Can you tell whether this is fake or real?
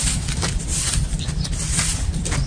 fake